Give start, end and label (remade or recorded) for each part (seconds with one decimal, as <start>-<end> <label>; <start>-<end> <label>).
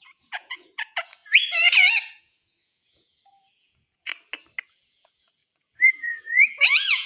0.0-4.1 remade; 4.1-4.7 recorded; 4.7-7.1 remade